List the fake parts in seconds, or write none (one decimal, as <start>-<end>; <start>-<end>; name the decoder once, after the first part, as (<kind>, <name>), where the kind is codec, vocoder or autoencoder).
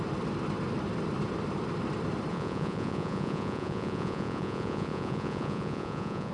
2.3-6.3 (vocoder, Vocos)